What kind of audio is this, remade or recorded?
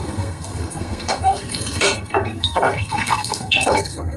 remade